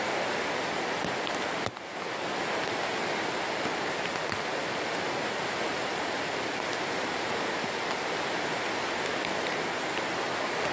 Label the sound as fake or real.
real